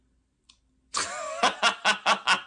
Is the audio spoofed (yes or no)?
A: no